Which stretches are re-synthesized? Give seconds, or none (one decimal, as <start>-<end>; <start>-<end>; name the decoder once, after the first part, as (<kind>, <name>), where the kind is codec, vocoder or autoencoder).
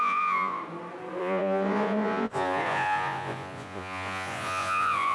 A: 0.0-0.6 (vocoder, Vocos); 1.2-5.1